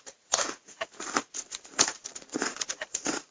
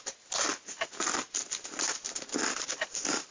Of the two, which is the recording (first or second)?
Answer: second